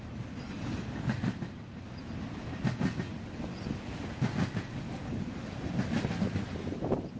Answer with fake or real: real